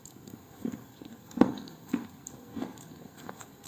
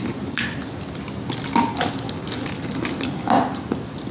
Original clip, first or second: second